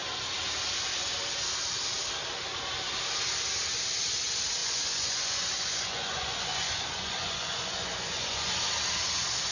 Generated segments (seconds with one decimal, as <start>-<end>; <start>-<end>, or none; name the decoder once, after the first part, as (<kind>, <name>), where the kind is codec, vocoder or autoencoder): 4.6-8.5 (vocoder, Vocos)